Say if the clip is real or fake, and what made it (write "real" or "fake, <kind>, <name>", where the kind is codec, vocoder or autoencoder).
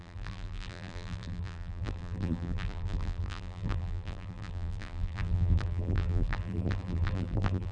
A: fake, vocoder, BigVGAN v2